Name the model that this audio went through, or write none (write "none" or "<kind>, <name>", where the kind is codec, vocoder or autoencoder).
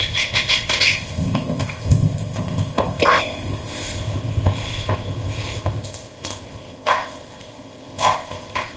codec, ZipCodec